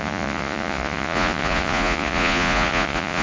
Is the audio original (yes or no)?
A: no